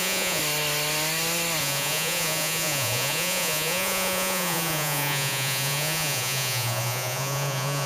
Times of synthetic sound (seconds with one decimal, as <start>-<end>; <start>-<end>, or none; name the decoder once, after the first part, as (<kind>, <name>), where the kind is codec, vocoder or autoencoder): 0.0-0.4 (vocoder, Vocos); 1.6-7.9